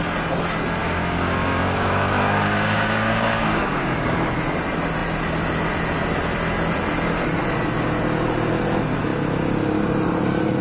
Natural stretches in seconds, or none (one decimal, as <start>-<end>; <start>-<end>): 0.0-0.8; 4.3-10.6